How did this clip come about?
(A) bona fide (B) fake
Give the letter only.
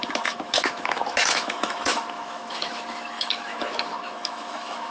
B